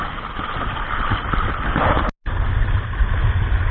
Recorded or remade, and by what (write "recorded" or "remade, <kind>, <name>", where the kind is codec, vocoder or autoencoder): recorded